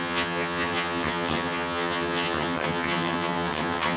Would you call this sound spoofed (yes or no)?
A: yes